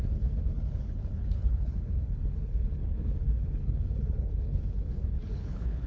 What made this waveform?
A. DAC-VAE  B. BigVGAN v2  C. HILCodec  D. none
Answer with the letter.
C